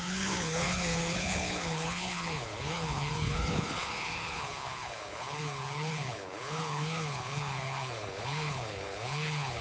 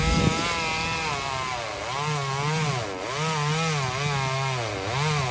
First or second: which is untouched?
second